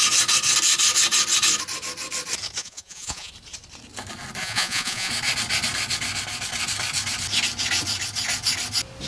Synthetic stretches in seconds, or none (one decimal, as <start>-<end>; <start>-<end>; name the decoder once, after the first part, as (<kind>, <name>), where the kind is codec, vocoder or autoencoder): 2.6-3.3 (vocoder, Vocos); 4.4-5.1